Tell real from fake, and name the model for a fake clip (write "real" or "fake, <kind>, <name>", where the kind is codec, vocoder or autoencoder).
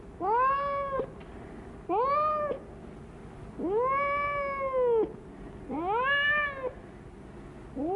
real